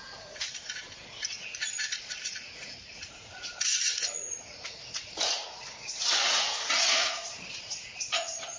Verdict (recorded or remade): remade